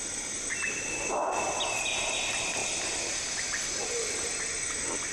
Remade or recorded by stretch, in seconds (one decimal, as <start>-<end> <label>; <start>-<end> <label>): 0.0-5.1 recorded